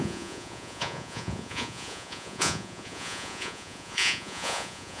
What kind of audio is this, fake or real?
fake